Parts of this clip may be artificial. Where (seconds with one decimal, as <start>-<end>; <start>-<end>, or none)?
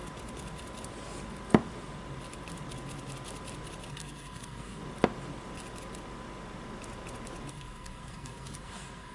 3.9-4.8; 7.5-9.1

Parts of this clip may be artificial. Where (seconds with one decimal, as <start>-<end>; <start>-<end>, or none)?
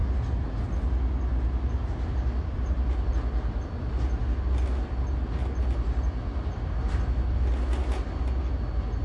none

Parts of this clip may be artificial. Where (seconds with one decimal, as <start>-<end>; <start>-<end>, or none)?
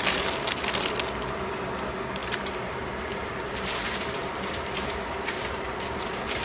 2.2-6.0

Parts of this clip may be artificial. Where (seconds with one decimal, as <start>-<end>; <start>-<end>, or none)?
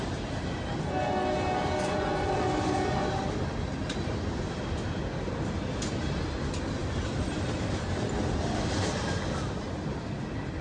none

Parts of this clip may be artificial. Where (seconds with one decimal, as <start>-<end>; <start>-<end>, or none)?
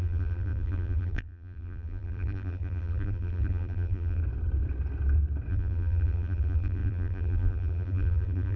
0.0-4.2; 5.5-8.6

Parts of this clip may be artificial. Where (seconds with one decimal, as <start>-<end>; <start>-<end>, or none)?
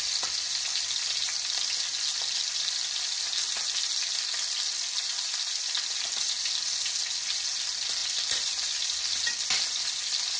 none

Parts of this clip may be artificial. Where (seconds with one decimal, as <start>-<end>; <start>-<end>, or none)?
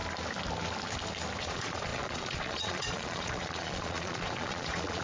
1.4-5.0